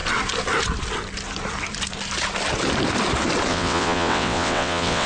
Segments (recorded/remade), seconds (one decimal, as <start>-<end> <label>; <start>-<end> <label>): 0.0-3.5 recorded; 3.5-5.1 remade